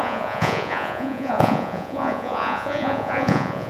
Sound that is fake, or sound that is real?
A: fake